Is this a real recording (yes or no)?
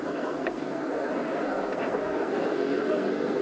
no